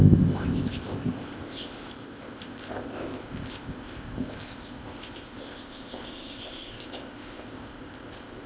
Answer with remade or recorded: remade